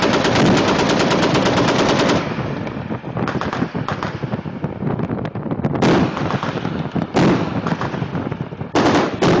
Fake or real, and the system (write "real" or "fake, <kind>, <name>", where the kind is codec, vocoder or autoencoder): real